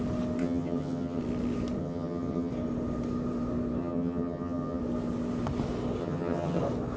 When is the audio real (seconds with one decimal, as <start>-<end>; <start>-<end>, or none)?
0.0-0.4; 1.2-1.8; 2.5-3.8; 4.8-6.0; 6.6-7.0